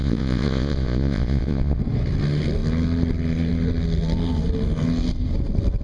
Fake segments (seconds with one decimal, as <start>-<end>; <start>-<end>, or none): 0.0-1.8